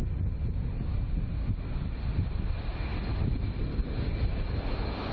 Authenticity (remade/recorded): recorded